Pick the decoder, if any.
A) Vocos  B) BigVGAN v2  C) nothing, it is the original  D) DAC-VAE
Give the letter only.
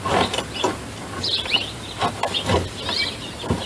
C